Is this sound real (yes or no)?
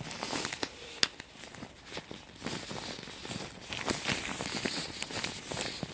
yes